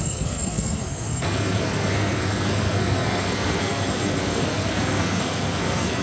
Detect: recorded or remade remade